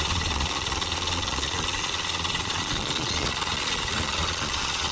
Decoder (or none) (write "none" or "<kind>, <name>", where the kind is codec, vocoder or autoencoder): vocoder, Vocos